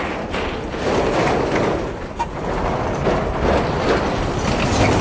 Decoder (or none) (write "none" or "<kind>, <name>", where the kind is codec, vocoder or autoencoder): none